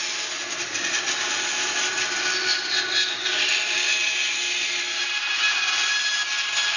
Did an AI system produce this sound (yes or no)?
no